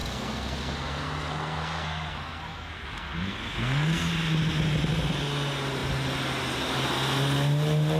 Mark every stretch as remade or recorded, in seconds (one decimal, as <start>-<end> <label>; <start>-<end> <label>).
0.0-4.1 remade; 4.1-8.0 recorded